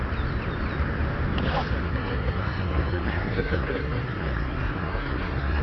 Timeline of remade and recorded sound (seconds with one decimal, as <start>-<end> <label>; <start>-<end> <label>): 0.0-1.8 recorded; 1.8-5.6 remade